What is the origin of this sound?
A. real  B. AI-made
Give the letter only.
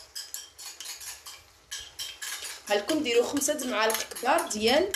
A